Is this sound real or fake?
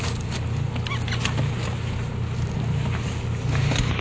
real